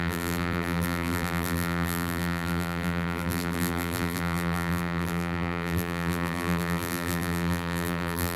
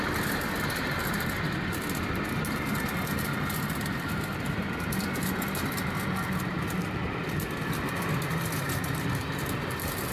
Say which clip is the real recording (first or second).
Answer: second